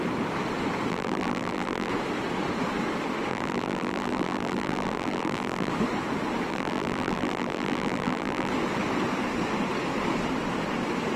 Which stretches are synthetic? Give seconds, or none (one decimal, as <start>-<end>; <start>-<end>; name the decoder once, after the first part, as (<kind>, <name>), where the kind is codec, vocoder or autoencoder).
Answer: 0.9-1.9 (vocoder, BigVGAN v2); 3.3-5.7; 6.5-8.5

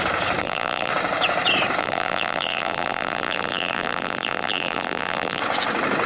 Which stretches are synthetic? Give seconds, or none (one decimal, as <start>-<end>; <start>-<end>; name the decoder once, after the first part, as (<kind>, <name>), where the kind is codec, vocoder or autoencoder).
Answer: 0.4-0.9 (vocoder, BigVGAN v2); 1.8-5.4

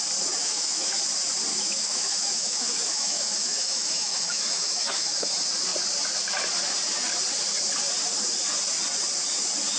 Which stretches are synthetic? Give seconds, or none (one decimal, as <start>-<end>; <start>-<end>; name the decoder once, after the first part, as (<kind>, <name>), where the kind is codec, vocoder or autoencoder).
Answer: 0.4-1.0 (autoencoder, DAC-VAE); 1.5-5.3

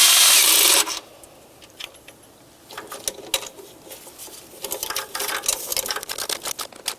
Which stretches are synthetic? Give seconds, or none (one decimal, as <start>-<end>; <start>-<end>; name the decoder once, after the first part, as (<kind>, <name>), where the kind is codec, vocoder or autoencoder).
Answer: none

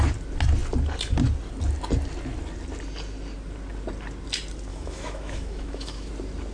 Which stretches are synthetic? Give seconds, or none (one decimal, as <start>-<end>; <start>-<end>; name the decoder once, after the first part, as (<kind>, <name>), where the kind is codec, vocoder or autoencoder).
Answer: 4.7-6.1 (autoencoder, DAC-VAE)

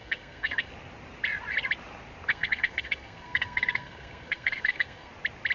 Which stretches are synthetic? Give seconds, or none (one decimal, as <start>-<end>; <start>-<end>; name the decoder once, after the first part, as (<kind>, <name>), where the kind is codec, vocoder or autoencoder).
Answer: 0.0-0.7 (codec, SNAC); 2.3-5.1